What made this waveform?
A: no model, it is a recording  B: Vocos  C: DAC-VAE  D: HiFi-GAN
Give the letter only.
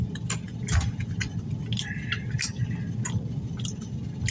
A